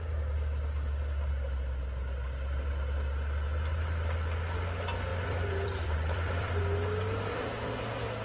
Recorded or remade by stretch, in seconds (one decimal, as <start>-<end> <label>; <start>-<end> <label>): 0.0-5.1 recorded; 5.1-6.6 remade; 6.6-8.2 recorded